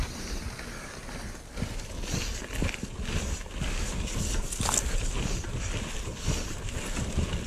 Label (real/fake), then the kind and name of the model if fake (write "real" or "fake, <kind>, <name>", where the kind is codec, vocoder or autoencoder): real